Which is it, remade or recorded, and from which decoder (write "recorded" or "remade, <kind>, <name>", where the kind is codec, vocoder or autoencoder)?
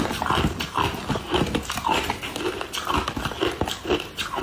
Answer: recorded